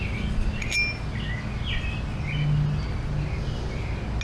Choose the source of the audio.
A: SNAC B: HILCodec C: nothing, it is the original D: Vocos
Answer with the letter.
C